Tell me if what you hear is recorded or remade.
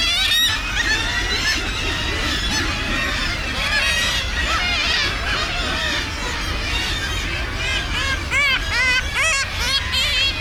recorded